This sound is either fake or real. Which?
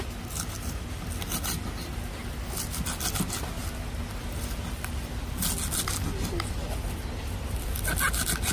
real